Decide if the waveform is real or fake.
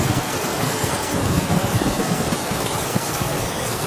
fake